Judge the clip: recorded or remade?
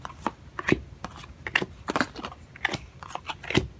recorded